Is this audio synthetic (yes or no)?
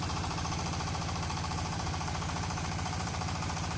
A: yes